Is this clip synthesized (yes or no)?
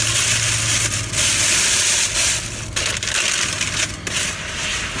no